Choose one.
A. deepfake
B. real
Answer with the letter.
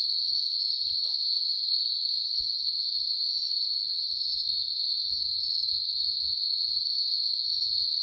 B